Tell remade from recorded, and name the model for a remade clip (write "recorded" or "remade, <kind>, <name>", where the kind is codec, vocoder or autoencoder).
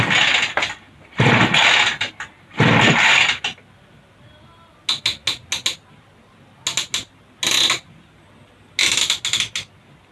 recorded